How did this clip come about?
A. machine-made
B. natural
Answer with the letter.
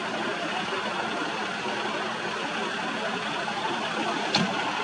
B